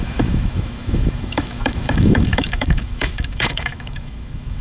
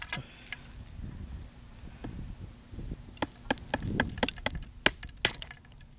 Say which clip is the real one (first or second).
second